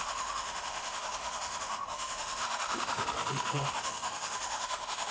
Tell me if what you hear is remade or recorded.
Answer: remade